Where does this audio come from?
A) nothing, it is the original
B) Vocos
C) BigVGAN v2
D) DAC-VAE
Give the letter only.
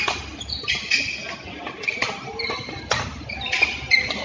A